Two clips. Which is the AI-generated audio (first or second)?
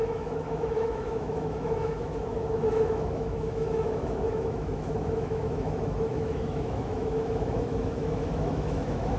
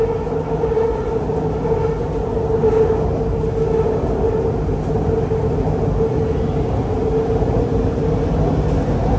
first